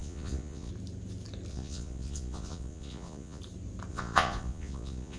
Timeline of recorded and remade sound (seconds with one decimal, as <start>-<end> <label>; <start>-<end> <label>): 0.0-0.7 remade; 0.7-1.5 recorded; 1.5-3.4 remade; 3.4-3.9 recorded; 3.9-5.2 remade